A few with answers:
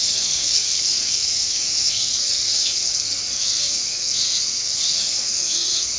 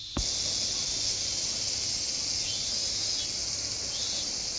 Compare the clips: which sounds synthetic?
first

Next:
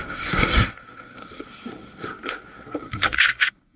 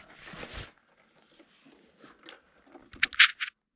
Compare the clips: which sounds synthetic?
first